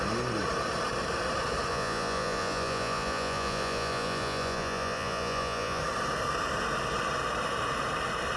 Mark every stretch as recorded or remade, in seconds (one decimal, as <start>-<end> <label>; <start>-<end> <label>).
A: 0.0-1.7 recorded; 1.7-5.8 remade; 5.8-8.4 recorded